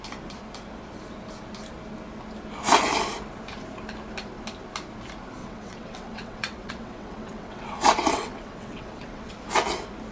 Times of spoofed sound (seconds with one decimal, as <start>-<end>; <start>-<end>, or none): 5.4-9.3